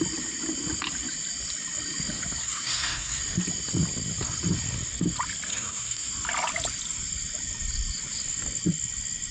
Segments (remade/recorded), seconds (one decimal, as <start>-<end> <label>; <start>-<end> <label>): 0.0-2.4 recorded; 2.4-3.2 remade; 3.2-5.5 recorded; 5.5-6.1 remade; 6.1-9.3 recorded